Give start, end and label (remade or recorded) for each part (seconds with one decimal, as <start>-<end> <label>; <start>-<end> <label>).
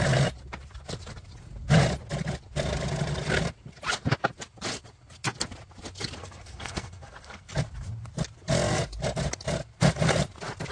0.0-6.2 recorded; 6.2-7.5 remade; 7.5-10.7 recorded